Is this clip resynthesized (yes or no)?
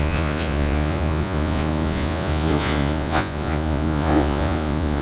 yes